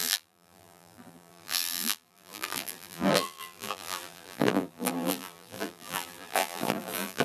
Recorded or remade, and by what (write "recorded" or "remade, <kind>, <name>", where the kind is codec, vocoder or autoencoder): remade, vocoder, BigVGAN v2